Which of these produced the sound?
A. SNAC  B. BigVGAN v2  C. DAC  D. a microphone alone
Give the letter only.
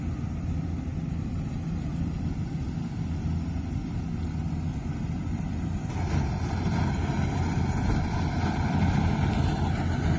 D